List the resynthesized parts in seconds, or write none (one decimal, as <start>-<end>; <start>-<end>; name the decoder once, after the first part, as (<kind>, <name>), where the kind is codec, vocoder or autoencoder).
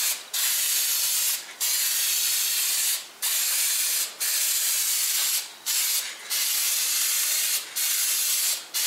none